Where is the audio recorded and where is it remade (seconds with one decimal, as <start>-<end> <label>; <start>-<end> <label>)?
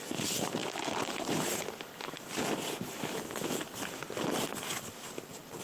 0.0-5.6 recorded